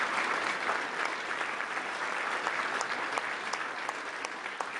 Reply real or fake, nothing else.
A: real